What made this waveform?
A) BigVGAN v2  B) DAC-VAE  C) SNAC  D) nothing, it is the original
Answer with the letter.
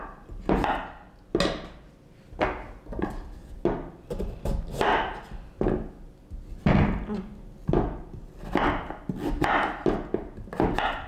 D